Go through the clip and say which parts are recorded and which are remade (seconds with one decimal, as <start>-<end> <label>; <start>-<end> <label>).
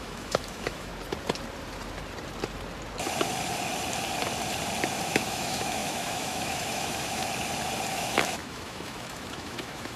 0.0-0.9 remade; 0.9-5.0 recorded; 5.0-7.2 remade; 7.2-7.9 recorded; 7.9-10.0 remade